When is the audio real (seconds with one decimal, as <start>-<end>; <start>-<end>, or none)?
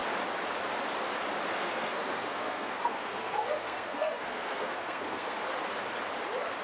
0.0-1.5; 5.4-6.6